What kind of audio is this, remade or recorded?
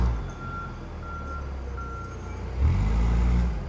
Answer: recorded